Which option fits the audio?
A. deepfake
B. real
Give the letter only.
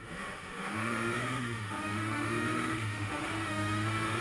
A